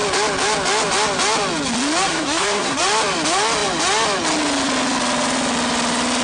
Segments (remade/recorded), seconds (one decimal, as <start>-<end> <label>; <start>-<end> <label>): 0.0-2.1 recorded; 2.1-2.8 remade; 2.8-6.2 recorded